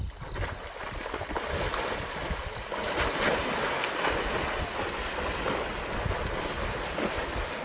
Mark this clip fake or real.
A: real